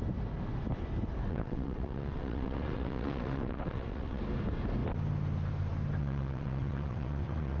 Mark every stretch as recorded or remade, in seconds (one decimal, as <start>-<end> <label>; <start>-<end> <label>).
0.0-1.3 recorded; 1.3-4.2 remade; 4.2-6.0 recorded; 6.0-7.6 remade